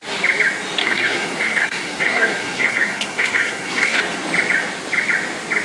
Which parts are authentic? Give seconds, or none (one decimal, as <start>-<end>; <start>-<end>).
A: 0.0-0.8; 4.0-5.6